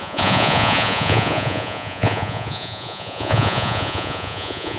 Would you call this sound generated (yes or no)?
yes